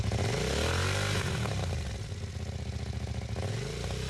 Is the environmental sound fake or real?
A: real